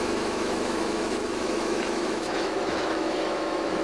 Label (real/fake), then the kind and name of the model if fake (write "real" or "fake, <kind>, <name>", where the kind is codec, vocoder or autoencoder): fake, autoencoder, DAC-VAE